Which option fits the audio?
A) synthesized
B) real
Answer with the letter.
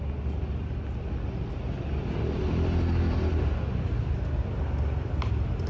B